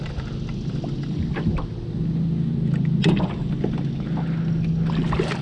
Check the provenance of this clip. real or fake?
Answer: real